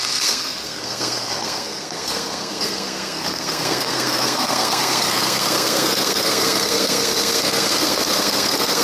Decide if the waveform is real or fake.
fake